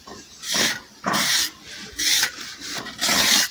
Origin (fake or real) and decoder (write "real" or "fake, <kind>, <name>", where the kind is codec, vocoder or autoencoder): real